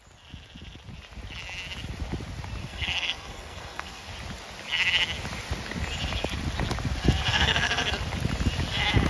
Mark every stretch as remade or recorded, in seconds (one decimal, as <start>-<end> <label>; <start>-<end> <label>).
0.0-2.6 recorded; 2.6-4.1 remade; 4.1-7.3 recorded; 7.3-7.9 remade; 7.9-9.1 recorded